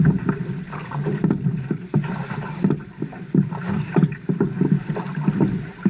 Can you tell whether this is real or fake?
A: real